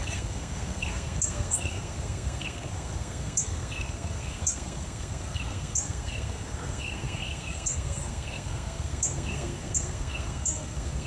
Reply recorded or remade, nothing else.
remade